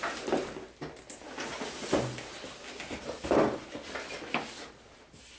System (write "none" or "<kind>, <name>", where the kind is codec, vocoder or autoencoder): none